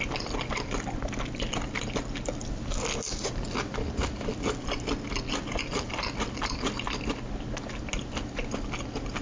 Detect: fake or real real